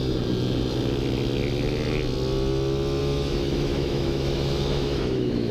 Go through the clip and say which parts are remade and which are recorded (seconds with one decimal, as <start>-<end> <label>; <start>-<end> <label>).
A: 0.0-3.0 recorded; 3.0-5.5 remade